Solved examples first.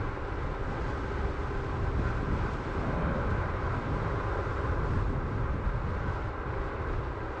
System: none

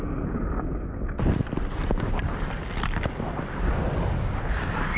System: none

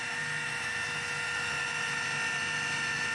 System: none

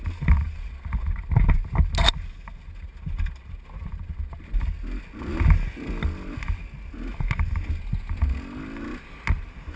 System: none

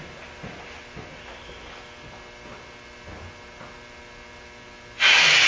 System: none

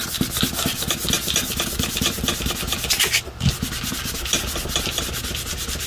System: none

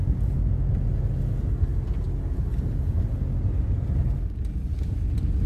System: none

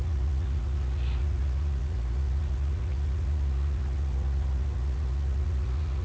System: vocoder, Vocos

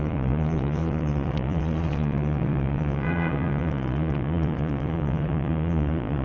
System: vocoder, Vocos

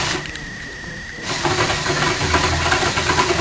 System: none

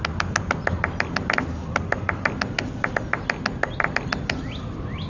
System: none